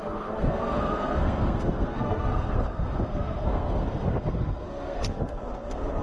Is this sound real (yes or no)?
no